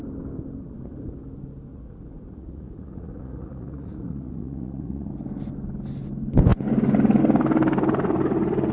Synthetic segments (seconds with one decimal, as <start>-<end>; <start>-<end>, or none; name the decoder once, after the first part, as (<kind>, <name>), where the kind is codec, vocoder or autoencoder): 1.7-5.1 (vocoder, Vocos)

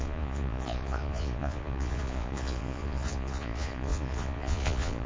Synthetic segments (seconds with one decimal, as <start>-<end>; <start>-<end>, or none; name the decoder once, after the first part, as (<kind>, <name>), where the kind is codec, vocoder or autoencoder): 0.0-5.1 (vocoder, Vocos)

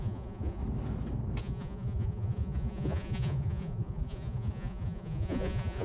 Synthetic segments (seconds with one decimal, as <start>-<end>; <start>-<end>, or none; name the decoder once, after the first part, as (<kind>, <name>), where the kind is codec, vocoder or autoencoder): 0.0-0.6 (vocoder, Vocos); 1.4-5.8